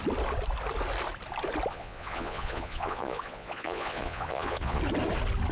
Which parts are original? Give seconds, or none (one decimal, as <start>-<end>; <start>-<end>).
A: 0.0-1.7; 4.8-5.5